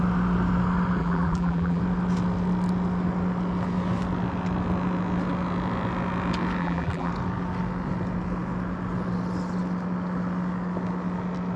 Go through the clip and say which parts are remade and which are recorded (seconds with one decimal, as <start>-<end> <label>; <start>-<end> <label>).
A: 0.0-1.0 recorded; 1.0-1.8 remade; 1.8-6.6 recorded; 6.6-7.1 remade; 7.1-11.6 recorded